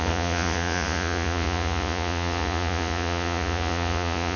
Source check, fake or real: fake